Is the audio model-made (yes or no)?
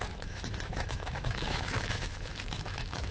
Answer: yes